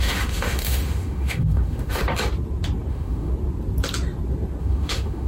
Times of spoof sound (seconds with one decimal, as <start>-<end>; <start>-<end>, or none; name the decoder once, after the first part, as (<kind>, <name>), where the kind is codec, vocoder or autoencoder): 0.0-2.0 (autoencoder, DAC-VAE); 2.9-3.3; 4.6-5.3